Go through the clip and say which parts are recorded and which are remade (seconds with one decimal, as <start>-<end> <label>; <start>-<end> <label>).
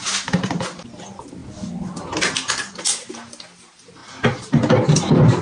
0.0-5.4 recorded